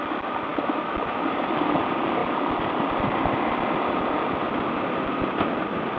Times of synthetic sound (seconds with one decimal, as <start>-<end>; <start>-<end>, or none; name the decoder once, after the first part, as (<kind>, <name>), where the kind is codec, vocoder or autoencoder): none